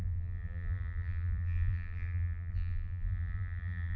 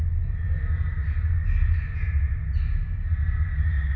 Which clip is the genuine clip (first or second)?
second